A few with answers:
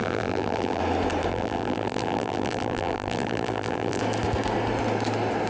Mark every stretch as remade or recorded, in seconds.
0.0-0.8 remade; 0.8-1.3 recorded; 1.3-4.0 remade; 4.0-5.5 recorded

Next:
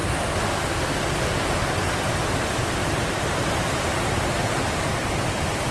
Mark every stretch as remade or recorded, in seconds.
0.0-2.8 recorded; 2.8-4.3 remade; 4.3-5.7 recorded

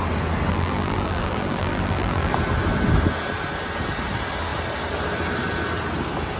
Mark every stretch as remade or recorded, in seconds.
0.0-0.5 recorded; 0.5-2.3 remade; 2.3-6.4 recorded